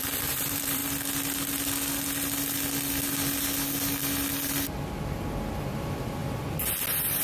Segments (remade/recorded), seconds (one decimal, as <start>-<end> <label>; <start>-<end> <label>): 0.0-0.8 remade; 0.8-5.0 recorded; 5.0-7.2 remade